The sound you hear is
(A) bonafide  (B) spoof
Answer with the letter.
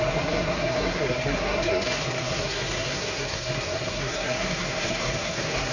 B